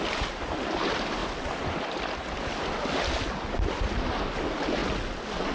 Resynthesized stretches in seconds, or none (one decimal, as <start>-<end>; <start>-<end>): none